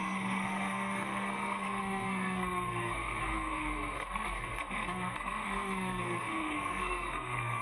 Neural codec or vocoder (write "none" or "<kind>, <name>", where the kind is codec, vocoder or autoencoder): codec, SNAC